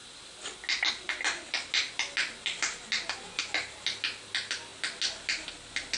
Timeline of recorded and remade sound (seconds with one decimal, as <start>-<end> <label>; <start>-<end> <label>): 0.0-6.0 recorded